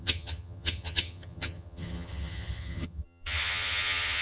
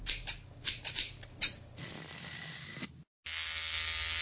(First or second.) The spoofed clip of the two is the first